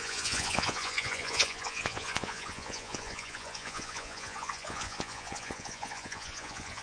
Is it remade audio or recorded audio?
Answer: remade